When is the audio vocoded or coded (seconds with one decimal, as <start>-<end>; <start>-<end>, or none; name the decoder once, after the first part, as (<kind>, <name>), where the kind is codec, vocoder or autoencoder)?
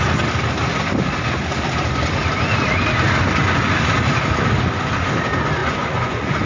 5.6-6.5 (vocoder, Vocos)